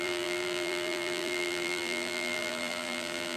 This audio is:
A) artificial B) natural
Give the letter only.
A